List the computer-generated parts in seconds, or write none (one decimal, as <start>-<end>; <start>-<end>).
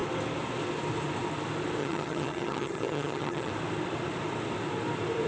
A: 1.8-3.5